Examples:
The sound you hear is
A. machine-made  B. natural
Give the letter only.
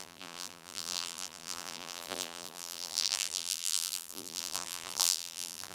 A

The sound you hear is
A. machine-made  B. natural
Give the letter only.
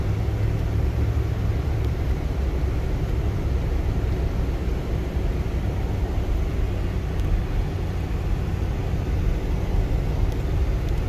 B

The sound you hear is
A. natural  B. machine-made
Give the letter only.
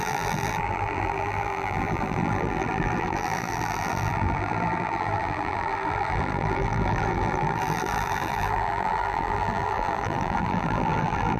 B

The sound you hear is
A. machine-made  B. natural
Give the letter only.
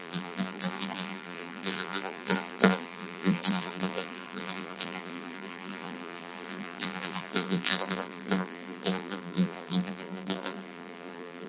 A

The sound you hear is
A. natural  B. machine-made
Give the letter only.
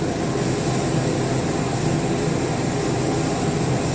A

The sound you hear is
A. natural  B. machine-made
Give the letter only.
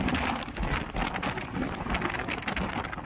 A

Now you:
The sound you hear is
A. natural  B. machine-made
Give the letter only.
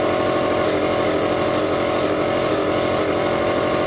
B